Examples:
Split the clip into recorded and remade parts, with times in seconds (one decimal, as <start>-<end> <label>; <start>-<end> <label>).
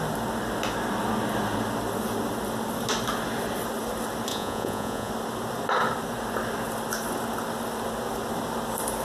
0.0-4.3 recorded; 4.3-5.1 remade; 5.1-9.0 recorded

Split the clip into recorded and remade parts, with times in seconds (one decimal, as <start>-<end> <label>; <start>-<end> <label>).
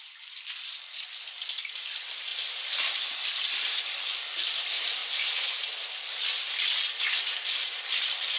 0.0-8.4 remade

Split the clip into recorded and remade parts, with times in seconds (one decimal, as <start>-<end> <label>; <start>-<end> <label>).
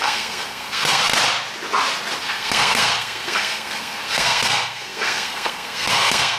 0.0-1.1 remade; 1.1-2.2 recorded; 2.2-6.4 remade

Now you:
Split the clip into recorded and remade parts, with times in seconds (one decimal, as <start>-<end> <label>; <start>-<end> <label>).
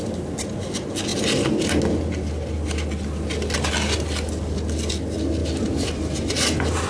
0.0-5.4 recorded; 5.4-6.3 remade; 6.3-6.9 recorded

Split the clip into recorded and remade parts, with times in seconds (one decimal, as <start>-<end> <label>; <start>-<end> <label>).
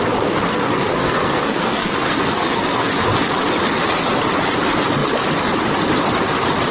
0.0-0.5 recorded; 0.5-2.9 remade; 2.9-6.7 recorded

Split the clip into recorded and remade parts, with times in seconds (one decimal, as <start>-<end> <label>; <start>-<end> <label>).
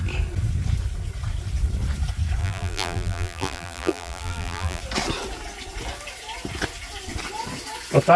0.0-2.4 recorded; 2.4-4.8 remade; 4.8-8.2 recorded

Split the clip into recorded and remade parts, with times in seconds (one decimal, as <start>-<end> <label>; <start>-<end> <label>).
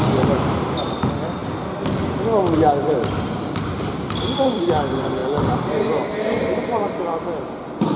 0.0-8.0 recorded